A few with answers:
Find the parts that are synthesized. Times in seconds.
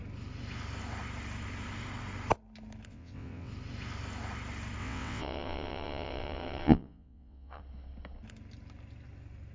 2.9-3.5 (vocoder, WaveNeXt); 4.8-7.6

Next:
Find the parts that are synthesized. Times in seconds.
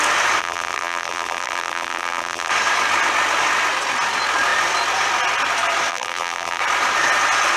0.4-2.5 (vocoder, BigVGAN v2); 5.9-6.6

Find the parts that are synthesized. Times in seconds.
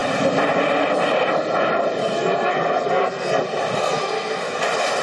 2.0-3.4 (codec, SNAC); 3.8-4.6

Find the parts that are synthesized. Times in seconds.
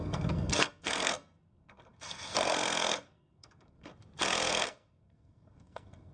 0.0-3.9 (codec, SNAC); 4.5-6.1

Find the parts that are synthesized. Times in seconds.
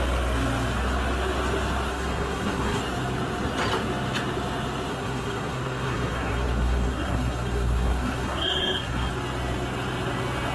1.9-2.8 (codec, SNAC); 4.9-9.1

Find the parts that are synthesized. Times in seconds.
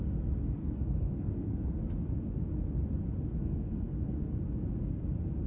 0.6-1.8 (codec, SNAC); 3.4-4.3